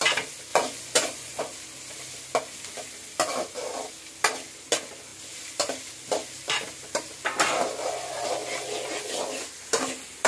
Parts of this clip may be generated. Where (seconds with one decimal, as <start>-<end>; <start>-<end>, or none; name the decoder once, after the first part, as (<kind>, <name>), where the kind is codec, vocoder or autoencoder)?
0.5-1.4 (vocoder, Vocos)